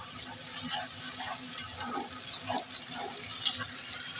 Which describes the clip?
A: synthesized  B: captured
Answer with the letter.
B